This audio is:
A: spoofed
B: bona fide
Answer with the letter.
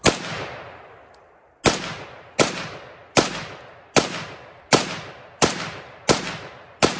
B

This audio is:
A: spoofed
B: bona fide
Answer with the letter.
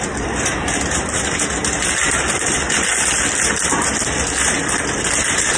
B